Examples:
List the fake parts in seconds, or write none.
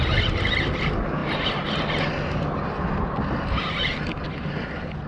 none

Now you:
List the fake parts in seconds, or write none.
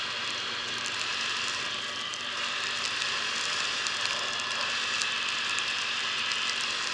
none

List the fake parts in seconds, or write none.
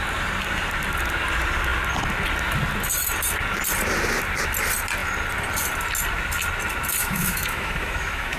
7.0-8.4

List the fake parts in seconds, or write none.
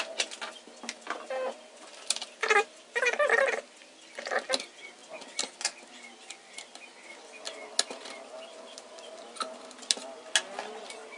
none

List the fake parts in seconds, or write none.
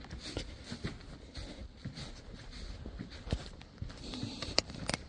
none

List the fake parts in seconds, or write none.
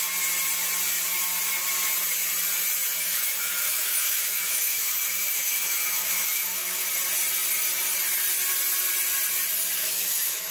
3.0-6.8; 9.8-10.5